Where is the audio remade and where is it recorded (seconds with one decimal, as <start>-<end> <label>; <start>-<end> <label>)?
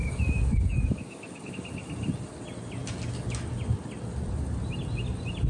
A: 0.0-1.5 remade; 1.5-5.5 recorded